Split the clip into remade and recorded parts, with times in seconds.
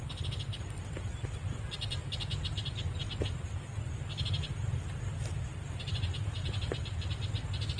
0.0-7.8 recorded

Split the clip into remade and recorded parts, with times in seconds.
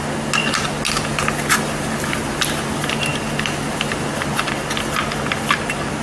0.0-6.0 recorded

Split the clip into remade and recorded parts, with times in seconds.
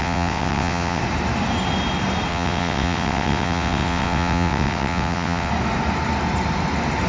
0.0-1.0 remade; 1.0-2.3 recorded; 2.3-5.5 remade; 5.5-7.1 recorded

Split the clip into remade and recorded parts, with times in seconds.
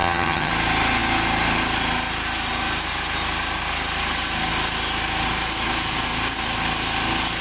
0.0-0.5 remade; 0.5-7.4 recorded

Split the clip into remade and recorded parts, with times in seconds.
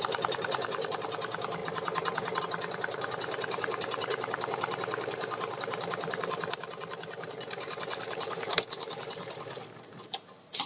0.0-10.7 remade